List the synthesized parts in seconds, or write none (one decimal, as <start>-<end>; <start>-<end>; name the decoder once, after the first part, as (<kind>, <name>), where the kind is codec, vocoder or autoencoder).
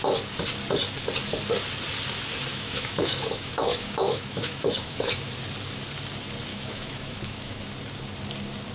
2.5-5.3 (autoencoder, DAC-VAE); 6.5-7.6